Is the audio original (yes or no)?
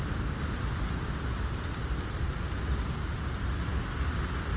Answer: yes